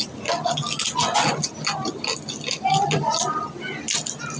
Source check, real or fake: real